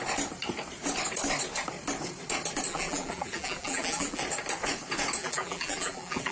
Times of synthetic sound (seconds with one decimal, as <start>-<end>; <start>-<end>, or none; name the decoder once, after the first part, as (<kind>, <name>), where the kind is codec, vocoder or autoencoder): 2.7-4.2 (vocoder, BigVGAN v2); 5.2-6.3